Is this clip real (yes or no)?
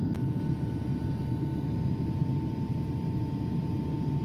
yes